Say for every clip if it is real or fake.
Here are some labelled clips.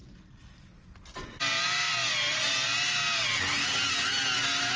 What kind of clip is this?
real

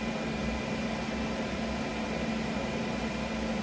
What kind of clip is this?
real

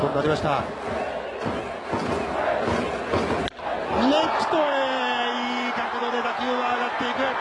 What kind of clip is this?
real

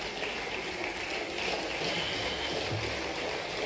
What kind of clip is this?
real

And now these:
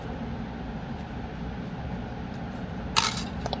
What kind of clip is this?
real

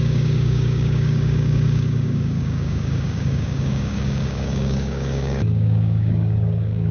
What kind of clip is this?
fake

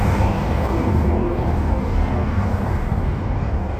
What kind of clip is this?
fake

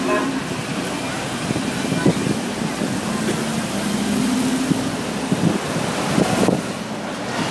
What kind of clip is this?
real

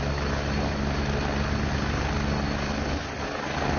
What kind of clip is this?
real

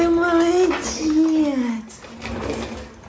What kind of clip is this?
real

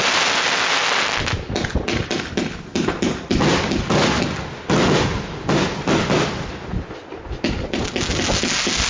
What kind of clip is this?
real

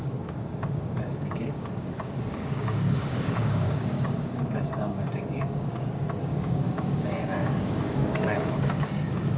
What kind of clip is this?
fake